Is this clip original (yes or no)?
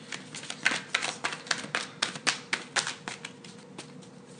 yes